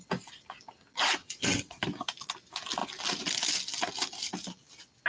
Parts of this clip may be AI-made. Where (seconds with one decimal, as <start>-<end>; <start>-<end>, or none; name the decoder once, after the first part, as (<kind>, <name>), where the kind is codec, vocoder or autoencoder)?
1.2-1.8 (vocoder, WaveNeXt)